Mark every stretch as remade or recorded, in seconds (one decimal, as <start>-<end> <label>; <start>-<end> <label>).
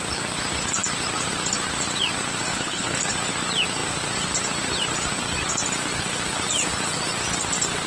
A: 0.0-2.5 recorded; 2.5-3.0 remade; 3.0-7.9 recorded